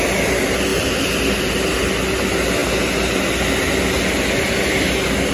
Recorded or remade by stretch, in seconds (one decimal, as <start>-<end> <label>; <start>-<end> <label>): 0.0-0.7 recorded; 0.7-1.5 remade; 1.5-5.3 recorded